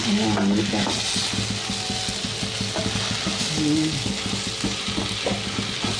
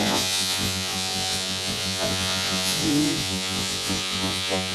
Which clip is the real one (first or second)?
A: first